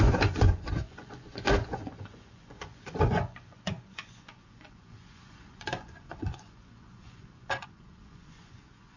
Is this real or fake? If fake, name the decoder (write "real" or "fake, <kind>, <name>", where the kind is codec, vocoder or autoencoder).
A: fake, vocoder, Vocos